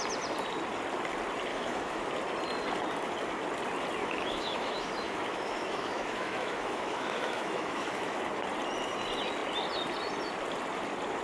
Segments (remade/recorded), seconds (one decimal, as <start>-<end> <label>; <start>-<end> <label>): 0.0-1.5 recorded; 1.5-2.1 remade; 2.1-4.0 recorded; 4.0-8.2 remade; 8.2-11.2 recorded